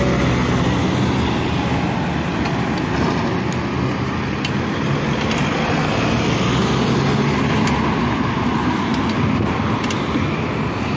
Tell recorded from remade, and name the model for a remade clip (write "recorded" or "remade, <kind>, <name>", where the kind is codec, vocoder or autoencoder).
recorded